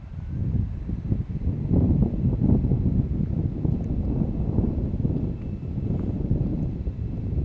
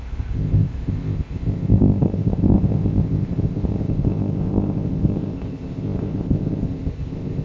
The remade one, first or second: second